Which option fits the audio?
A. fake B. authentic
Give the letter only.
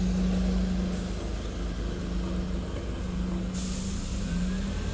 B